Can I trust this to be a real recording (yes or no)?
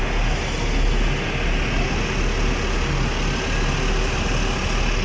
yes